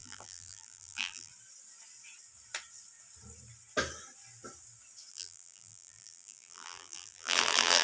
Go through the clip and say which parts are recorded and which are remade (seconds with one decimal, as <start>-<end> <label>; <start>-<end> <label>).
0.0-1.3 remade; 1.3-5.1 recorded; 5.1-7.8 remade

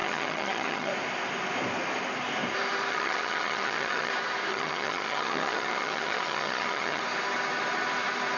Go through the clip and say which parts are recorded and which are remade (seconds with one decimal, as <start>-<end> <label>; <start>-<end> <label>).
0.0-0.9 remade; 0.9-2.9 recorded; 2.9-4.1 remade; 4.1-4.5 recorded; 4.5-7.0 remade; 7.0-8.4 recorded

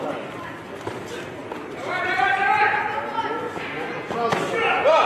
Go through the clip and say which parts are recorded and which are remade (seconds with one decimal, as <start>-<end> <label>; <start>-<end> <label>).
0.0-1.4 recorded; 1.4-2.9 remade; 2.9-5.1 recorded

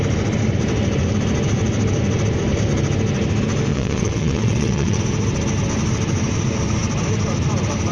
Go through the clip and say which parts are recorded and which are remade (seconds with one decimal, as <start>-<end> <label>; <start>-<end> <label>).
0.0-3.7 recorded; 3.7-5.0 remade; 5.0-7.9 recorded

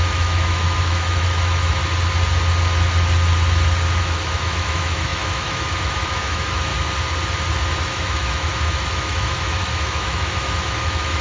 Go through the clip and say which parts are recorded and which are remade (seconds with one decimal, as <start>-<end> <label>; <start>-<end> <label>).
0.0-1.8 remade; 1.8-4.0 recorded; 4.0-6.7 remade; 6.7-7.8 recorded; 7.8-11.2 remade